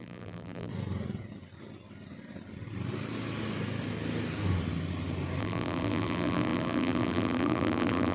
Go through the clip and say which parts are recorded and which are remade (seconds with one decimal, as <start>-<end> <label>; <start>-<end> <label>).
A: 0.0-0.7 remade; 0.7-5.4 recorded; 5.4-8.1 remade